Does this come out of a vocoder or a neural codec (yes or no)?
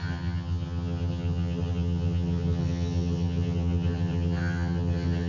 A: yes